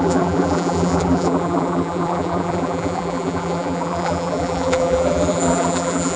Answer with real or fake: fake